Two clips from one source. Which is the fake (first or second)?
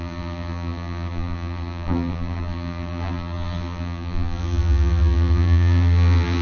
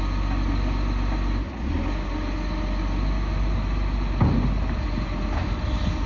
first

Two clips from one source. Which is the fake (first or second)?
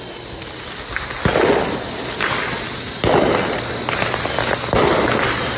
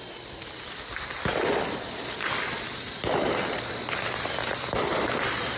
second